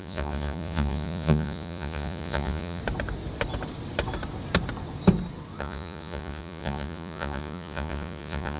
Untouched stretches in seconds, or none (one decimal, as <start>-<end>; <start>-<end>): 2.8-5.6